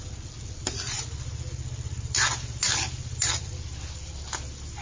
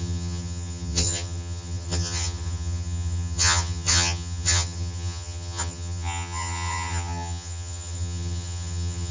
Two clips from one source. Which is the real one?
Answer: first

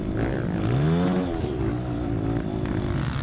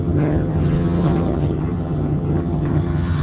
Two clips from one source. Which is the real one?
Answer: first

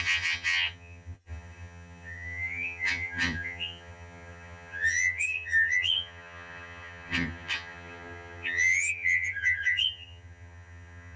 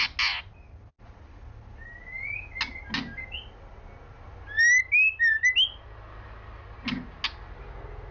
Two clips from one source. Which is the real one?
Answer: second